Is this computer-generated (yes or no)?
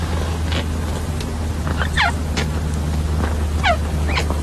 no